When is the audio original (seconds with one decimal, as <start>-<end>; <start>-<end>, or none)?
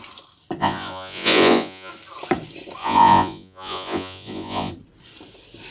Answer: 0.0-0.6; 1.9-2.8; 4.7-5.7